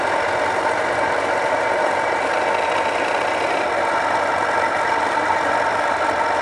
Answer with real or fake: real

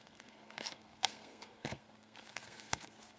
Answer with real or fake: fake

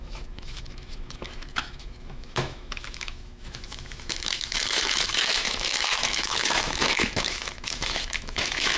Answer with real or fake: fake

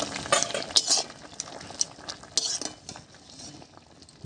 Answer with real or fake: real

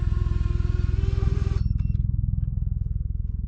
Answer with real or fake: real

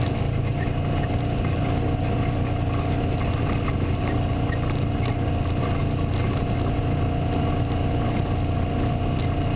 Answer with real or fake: real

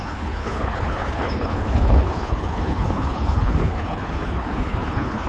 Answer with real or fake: fake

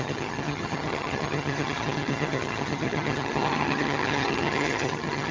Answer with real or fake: fake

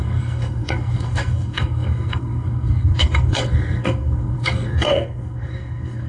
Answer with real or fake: fake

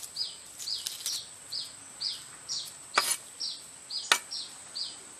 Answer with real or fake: real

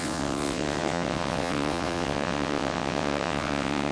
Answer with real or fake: fake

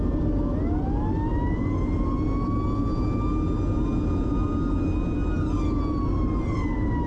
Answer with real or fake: real